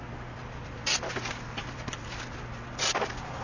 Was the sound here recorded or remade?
recorded